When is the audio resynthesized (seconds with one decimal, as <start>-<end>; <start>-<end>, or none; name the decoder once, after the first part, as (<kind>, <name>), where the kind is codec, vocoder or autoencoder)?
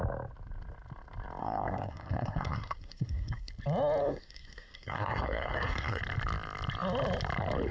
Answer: 1.4-3.5 (codec, SNAC); 4.0-6.0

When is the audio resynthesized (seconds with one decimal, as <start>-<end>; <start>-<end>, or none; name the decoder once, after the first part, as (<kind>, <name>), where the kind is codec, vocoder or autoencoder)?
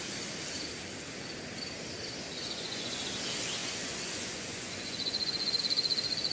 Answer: 2.3-3.0 (vocoder, Vocos); 3.6-5.6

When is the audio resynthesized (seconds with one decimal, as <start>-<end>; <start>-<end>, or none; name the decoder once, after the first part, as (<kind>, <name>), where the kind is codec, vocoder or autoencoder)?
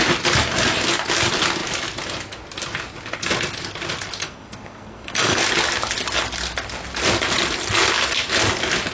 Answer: 4.2-5.4 (codec, SNAC)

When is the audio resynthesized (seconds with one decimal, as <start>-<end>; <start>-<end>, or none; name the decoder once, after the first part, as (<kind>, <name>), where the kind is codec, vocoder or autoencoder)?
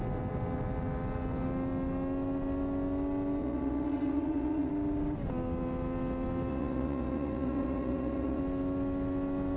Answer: 3.4-4.7 (vocoder, Vocos); 6.5-8.4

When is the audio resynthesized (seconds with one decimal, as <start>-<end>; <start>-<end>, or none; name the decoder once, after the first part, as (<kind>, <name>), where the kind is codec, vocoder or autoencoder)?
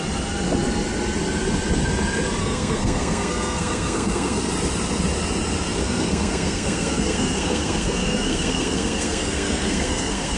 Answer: 2.4-4.5 (codec, SNAC); 5.8-10.4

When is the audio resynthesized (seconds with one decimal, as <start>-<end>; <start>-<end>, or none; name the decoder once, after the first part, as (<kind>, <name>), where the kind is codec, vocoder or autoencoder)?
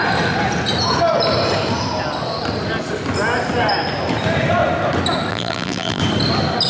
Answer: 5.3-6.0 (vocoder, BigVGAN v2)